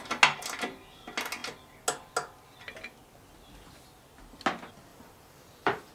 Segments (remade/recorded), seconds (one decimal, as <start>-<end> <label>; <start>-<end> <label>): 0.0-4.9 recorded; 4.9-5.9 remade